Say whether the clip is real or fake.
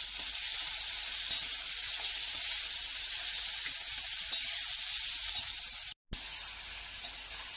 real